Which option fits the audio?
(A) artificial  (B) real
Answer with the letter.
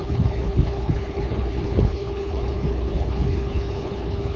A